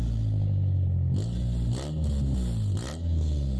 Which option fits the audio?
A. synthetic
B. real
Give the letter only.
B